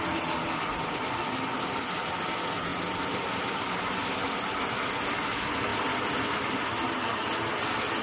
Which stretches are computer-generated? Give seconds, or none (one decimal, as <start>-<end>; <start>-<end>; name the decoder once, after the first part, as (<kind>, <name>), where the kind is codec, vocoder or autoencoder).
none